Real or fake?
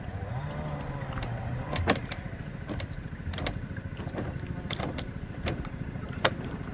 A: fake